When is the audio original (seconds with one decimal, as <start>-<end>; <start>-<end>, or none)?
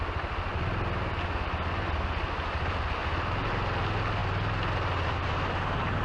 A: 0.0-6.0